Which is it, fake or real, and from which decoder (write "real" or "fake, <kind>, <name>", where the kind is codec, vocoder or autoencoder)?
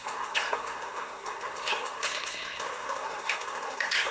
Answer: fake, codec, SNAC